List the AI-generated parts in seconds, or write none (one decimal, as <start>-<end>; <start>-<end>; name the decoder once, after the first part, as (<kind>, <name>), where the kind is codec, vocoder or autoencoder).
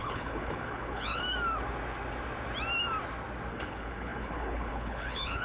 0.0-1.2 (codec, HILCodec); 3.5-5.4